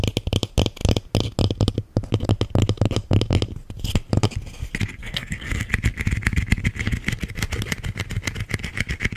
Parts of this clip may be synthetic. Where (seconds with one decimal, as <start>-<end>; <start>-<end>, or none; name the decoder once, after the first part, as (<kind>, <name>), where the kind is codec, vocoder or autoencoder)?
5.0-5.7 (codec, SNAC)